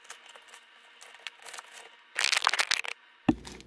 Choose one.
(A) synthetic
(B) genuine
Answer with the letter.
B